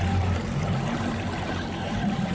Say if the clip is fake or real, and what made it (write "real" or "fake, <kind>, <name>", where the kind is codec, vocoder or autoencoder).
real